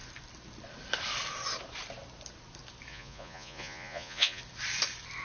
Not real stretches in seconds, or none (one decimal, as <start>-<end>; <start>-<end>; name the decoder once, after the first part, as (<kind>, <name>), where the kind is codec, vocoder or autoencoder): 2.9-4.4 (vocoder, Vocos)